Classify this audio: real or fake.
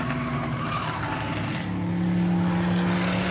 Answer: real